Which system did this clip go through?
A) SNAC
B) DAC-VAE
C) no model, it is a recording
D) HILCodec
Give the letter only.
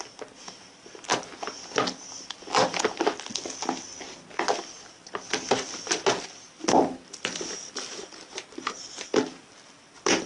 C